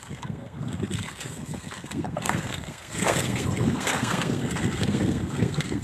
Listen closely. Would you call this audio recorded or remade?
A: remade